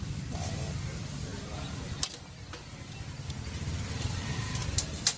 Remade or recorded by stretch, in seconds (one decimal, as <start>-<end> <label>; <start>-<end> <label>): 0.0-1.3 remade; 1.3-4.1 recorded; 4.1-4.6 remade; 4.6-5.2 recorded